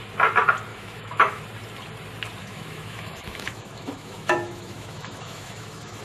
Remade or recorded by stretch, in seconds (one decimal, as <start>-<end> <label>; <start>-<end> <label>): 0.0-0.7 recorded; 0.7-1.4 remade; 1.4-2.4 recorded; 2.4-6.0 remade